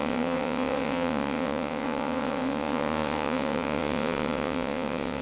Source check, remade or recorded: remade